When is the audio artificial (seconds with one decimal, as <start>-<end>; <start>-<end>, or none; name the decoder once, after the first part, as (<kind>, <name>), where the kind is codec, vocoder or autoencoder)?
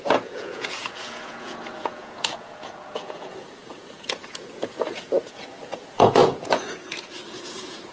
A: 0.0-7.9 (vocoder, Vocos)